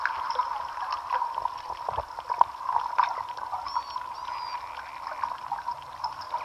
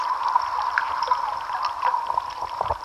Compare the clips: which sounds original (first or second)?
first